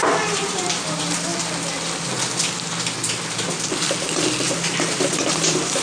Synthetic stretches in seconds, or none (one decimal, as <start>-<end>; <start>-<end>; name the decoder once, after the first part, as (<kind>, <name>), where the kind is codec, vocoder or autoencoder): 0.0-1.3 (vocoder, BigVGAN v2); 4.7-5.8